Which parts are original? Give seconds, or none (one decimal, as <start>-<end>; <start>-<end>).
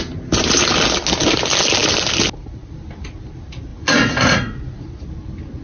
0.0-3.7; 5.0-5.6